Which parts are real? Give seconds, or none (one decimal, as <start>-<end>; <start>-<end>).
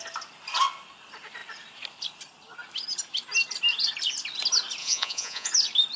0.0-4.8; 5.5-6.0